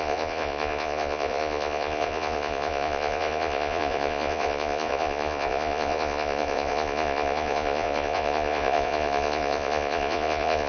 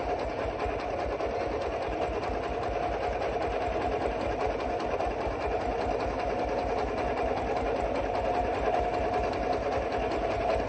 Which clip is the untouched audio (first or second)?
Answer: second